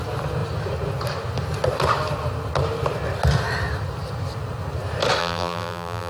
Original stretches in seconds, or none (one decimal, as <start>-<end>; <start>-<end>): 0.0-5.2